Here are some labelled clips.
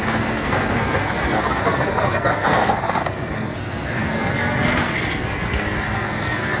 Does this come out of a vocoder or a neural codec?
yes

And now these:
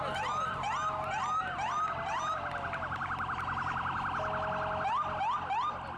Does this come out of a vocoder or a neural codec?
no